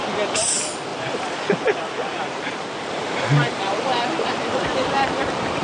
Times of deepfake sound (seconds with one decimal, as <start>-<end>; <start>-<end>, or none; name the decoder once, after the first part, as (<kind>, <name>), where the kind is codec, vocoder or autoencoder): 0.9-1.6 (vocoder, BigVGAN v2); 2.1-5.6